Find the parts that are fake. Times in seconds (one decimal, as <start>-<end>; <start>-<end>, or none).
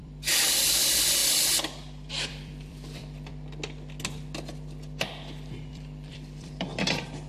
0.0-1.2; 2.1-3.3; 5.7-7.3